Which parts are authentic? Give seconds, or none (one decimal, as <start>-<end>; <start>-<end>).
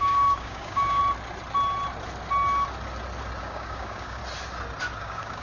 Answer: 1.0-3.4; 4.2-5.0